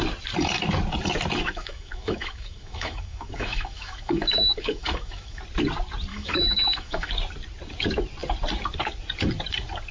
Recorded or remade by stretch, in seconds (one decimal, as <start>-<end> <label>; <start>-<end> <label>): 0.0-1.4 recorded; 1.4-5.4 remade; 5.4-6.1 recorded; 6.1-7.1 remade; 7.1-9.9 recorded